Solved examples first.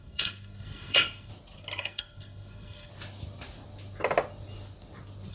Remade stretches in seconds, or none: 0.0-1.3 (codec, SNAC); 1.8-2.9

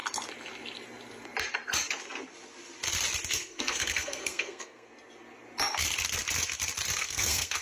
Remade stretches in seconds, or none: 3.3-4.9 (codec, SNAC); 7.0-7.6

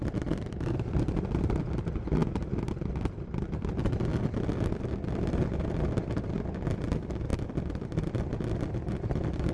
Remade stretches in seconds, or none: none

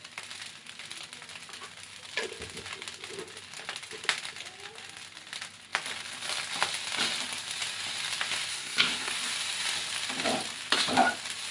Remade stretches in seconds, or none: 8.5-9.1 (codec, SNAC)